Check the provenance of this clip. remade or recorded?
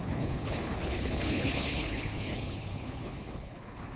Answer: remade